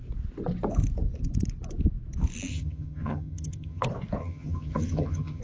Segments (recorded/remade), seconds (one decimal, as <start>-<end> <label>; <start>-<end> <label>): 0.0-2.5 recorded; 2.5-3.8 remade; 3.8-4.2 recorded; 4.2-5.4 remade